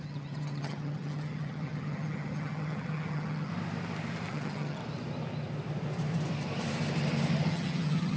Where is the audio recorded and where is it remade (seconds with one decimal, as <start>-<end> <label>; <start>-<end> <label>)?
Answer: 0.0-3.5 remade; 3.5-4.3 recorded; 4.3-4.8 remade; 4.8-7.5 recorded; 7.5-8.2 remade